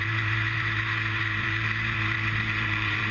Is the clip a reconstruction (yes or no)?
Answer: yes